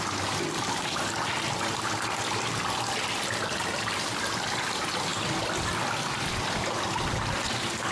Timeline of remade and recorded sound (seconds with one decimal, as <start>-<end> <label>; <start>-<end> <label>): 0.0-7.9 recorded